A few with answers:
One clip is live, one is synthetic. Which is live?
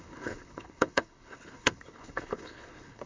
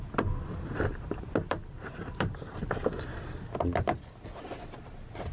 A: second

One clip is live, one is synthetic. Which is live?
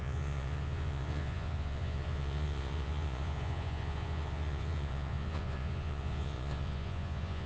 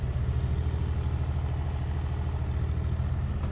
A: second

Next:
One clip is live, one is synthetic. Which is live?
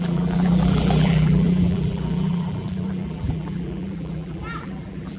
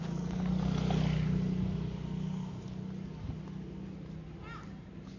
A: second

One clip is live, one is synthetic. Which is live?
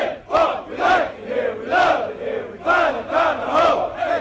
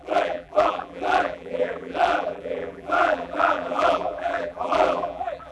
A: first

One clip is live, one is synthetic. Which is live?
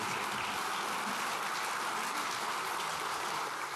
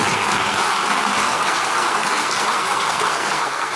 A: first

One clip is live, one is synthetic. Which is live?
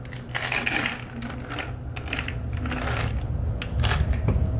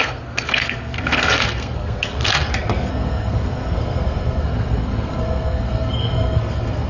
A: first